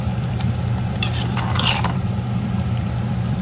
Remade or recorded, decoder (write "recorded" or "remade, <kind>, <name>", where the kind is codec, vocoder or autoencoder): remade, vocoder, BigVGAN v2